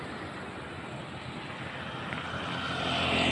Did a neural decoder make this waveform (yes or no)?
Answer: no